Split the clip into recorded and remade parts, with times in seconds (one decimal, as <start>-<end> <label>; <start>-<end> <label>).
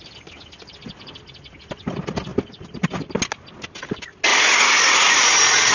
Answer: 0.0-5.7 recorded